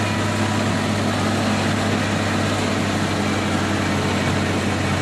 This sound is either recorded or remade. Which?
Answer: recorded